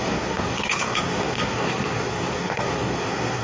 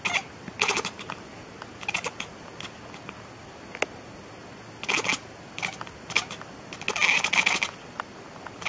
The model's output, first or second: first